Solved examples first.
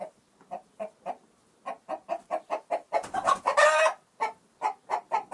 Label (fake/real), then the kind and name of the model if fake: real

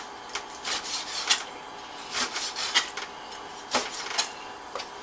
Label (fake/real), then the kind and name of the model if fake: real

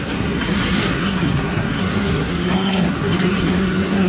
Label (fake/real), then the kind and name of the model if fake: fake, codec, SNAC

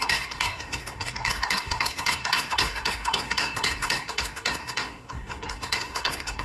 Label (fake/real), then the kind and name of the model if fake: fake, codec, SNAC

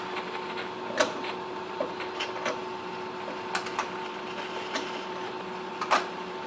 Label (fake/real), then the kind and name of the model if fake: real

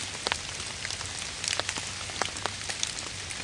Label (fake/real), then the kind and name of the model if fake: real